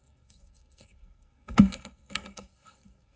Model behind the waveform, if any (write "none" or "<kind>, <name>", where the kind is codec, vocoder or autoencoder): codec, SNAC